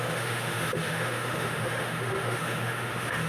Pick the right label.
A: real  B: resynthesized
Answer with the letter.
B